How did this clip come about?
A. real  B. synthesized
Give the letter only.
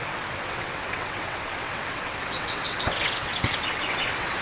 B